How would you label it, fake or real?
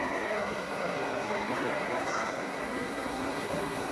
fake